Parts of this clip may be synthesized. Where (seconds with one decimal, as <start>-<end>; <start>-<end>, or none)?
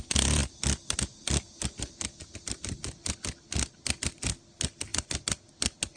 none